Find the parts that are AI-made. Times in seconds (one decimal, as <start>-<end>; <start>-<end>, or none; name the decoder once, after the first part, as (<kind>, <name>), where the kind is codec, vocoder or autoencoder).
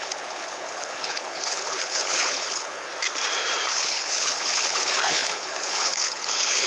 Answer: 0.0-2.9 (codec, HILCodec); 3.7-6.7